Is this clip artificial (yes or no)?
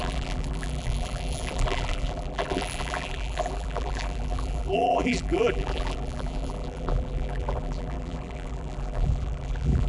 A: yes